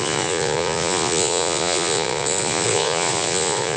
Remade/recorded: remade